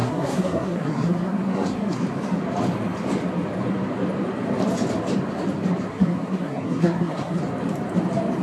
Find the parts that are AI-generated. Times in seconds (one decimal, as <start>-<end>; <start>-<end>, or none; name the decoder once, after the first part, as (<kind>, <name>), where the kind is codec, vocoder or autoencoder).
0.0-2.0 (codec, SNAC); 5.9-7.4